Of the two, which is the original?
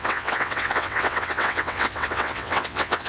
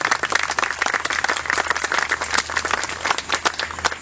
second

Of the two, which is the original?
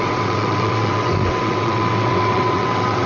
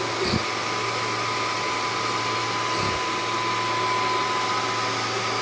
second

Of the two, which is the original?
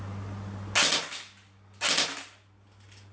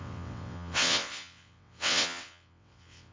first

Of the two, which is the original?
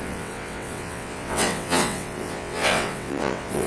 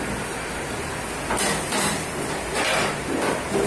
second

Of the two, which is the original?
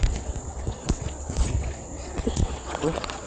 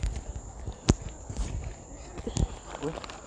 second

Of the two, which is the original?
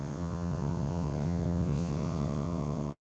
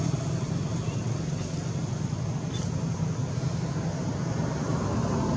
second